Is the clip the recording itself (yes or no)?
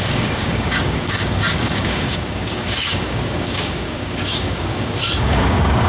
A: no